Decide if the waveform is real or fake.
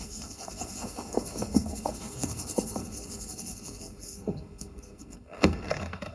fake